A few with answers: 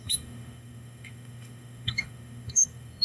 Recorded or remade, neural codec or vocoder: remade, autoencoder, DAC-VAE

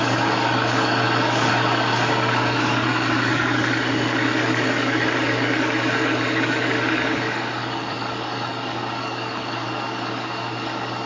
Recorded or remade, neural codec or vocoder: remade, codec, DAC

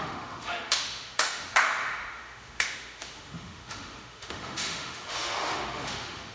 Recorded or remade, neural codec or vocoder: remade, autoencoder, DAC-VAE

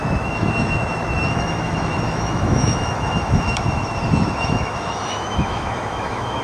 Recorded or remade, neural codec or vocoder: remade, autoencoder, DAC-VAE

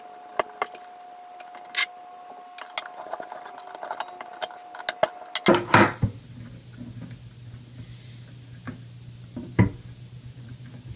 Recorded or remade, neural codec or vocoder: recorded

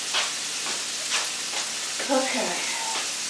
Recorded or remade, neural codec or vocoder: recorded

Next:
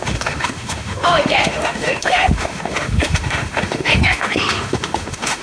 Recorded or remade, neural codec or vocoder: remade, autoencoder, DAC-VAE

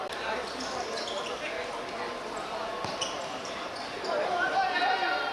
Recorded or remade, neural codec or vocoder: recorded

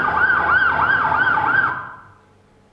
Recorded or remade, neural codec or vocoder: recorded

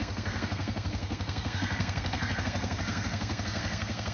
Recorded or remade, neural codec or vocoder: remade, codec, SNAC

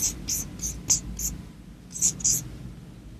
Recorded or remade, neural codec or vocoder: recorded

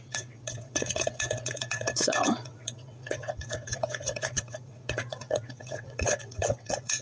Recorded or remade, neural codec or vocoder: remade, vocoder, WaveNeXt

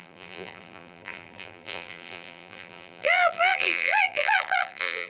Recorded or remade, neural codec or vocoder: remade, vocoder, BigVGAN v2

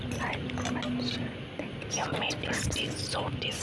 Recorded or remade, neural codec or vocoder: recorded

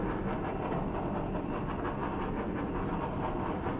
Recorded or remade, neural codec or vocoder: recorded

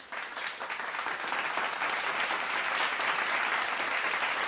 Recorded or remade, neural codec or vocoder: recorded